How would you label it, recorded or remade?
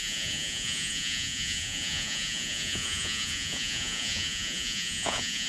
remade